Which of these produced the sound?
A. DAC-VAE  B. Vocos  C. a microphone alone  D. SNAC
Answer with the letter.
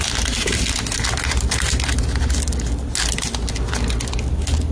C